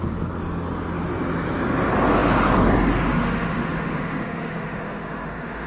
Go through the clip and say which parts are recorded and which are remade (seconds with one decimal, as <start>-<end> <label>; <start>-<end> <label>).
0.0-3.1 recorded; 3.1-5.7 remade